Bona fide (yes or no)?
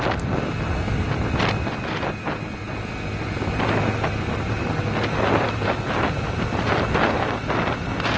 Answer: yes